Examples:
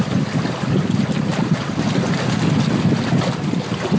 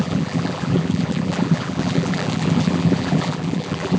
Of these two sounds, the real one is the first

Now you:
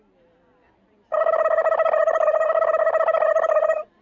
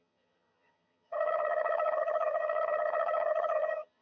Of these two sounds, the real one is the first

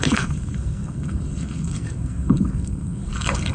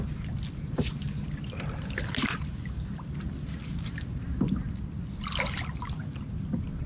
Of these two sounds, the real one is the second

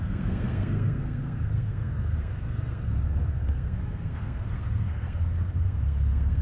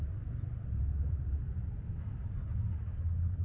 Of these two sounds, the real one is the second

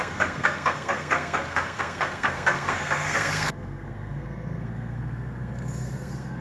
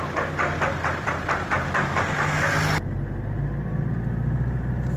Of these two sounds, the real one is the second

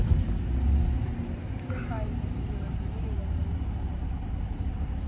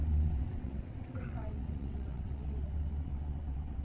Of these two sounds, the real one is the first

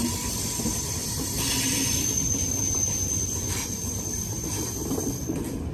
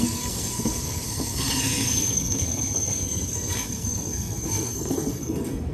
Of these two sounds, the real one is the first